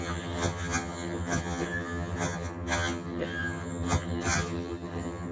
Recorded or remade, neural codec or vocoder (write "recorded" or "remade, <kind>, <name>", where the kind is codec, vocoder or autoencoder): remade, vocoder, HiFi-GAN